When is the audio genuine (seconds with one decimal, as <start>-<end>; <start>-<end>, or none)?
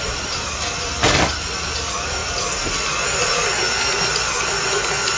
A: 0.0-5.2